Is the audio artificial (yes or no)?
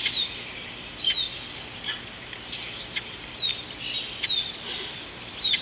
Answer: no